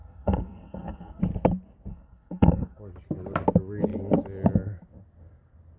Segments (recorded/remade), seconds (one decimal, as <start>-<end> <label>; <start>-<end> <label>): 0.0-1.2 remade; 1.2-1.9 recorded; 1.9-2.8 remade; 2.8-5.8 recorded